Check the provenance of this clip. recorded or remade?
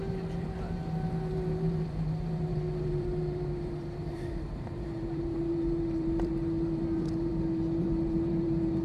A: remade